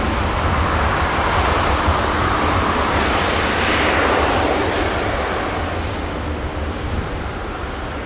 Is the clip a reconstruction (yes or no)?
no